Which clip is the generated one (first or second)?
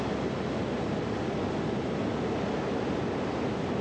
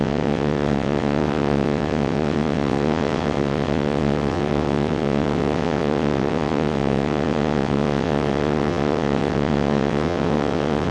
second